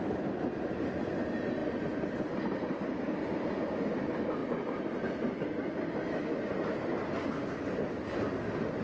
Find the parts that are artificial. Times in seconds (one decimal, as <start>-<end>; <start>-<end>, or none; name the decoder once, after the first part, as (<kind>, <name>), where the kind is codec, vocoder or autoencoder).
1.6-2.4 (vocoder, BigVGAN v2)